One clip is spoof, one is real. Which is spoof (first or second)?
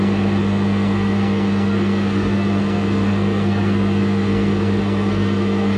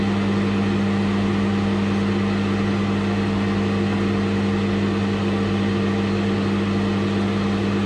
first